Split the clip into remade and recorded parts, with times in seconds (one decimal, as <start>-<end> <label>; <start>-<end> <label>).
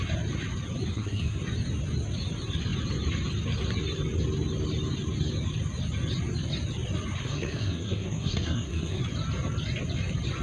0.0-0.9 recorded; 0.9-1.4 remade; 1.4-7.2 recorded; 7.2-9.0 remade; 9.0-10.4 recorded